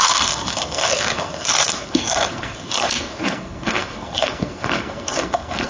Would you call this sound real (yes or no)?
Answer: no